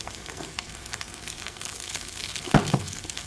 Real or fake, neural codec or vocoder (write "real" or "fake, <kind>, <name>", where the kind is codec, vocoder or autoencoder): fake, codec, SNAC